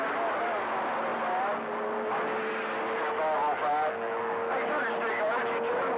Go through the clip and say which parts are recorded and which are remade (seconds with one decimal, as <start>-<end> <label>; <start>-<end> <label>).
0.0-6.0 recorded